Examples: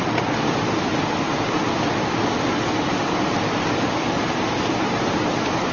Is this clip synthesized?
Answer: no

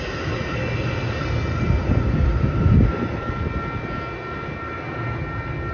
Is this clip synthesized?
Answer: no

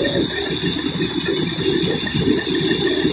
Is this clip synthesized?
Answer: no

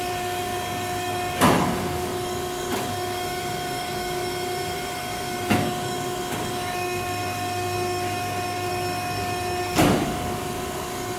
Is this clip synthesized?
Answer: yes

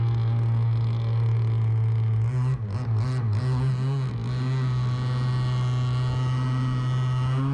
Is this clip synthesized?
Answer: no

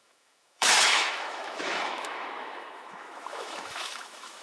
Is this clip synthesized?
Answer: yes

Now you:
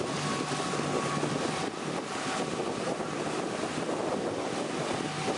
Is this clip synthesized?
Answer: no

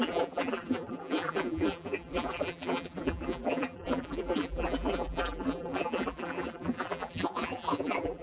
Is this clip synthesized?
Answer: yes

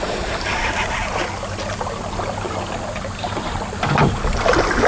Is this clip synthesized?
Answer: no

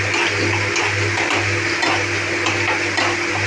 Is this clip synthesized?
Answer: no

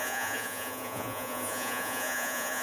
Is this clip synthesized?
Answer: yes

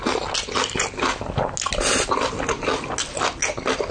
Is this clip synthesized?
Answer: no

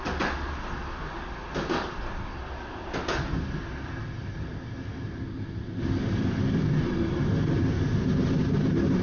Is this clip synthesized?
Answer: no